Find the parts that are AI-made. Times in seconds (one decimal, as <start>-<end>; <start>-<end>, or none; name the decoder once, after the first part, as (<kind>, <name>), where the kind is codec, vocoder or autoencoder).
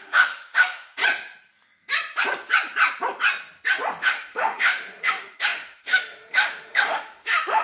0.0-1.0 (autoencoder, DAC-VAE); 4.0-7.6